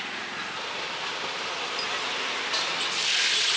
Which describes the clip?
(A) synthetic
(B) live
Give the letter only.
A